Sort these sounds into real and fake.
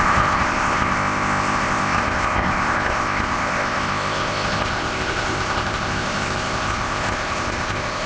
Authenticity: fake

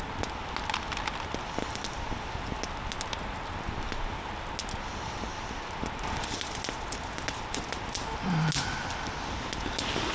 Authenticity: real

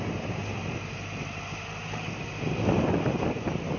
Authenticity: real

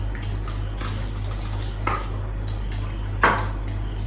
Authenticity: real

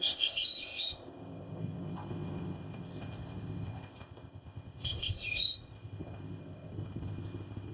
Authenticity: fake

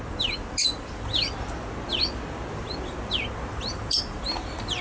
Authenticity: real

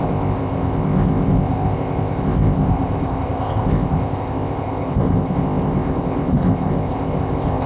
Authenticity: fake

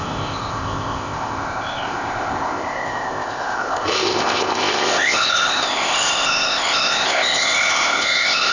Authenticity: fake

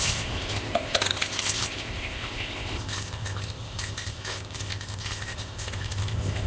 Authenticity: fake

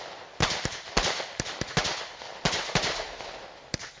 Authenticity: real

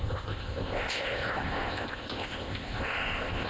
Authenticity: fake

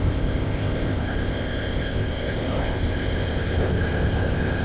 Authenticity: fake